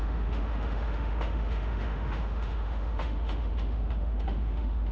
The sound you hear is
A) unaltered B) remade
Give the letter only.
B